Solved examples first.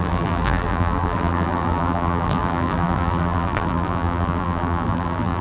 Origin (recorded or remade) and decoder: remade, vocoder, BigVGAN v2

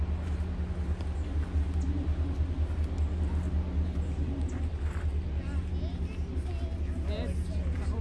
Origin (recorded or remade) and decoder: recorded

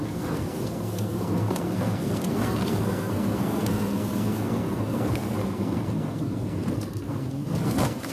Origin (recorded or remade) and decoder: remade, codec, SNAC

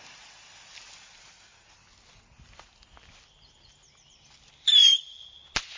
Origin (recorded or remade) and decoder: recorded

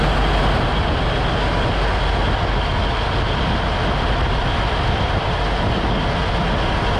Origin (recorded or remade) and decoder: recorded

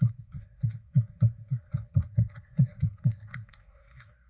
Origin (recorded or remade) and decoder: remade, codec, SNAC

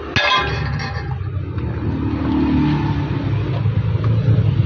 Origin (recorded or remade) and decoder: recorded